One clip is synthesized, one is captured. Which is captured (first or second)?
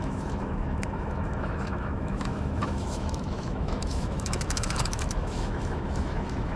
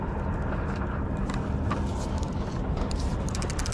second